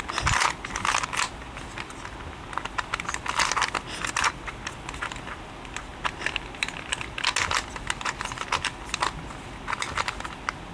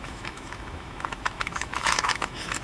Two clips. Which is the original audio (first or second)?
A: first